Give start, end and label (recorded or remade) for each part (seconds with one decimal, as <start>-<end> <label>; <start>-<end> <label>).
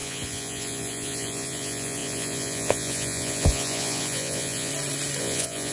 0.0-4.7 remade; 4.7-5.2 recorded; 5.2-5.7 remade